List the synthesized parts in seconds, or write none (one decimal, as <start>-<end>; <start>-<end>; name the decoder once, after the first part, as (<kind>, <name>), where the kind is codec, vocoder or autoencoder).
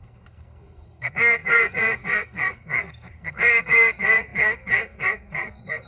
0.0-5.9 (codec, SNAC)